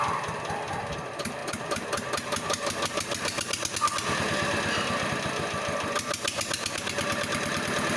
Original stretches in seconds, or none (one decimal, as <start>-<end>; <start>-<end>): 0.0-8.0